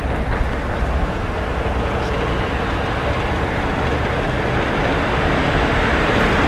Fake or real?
real